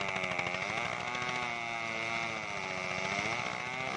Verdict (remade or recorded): recorded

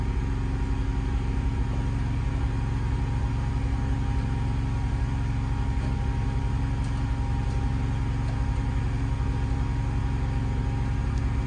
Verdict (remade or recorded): recorded